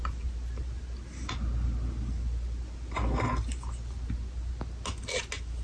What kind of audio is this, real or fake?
real